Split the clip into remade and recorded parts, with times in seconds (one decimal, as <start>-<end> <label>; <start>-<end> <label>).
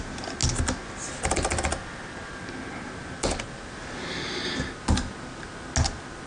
0.0-6.3 recorded